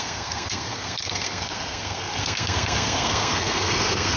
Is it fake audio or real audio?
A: fake